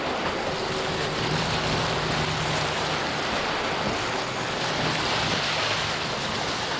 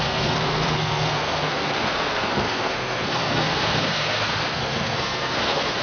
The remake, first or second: second